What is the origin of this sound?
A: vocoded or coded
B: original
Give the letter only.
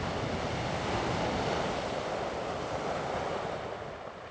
B